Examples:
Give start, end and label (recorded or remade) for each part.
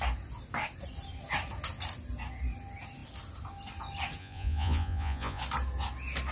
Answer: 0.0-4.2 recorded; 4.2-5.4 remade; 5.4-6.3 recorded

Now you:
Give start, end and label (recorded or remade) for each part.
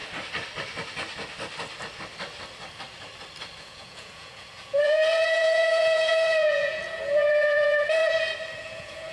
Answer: 0.0-3.6 recorded; 3.6-8.0 remade; 8.0-8.6 recorded; 8.6-9.1 remade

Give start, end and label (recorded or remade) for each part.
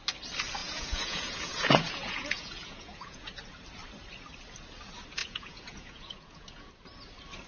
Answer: 0.0-0.6 recorded; 0.6-3.3 remade; 3.3-5.2 recorded; 5.2-6.7 remade; 6.7-7.5 recorded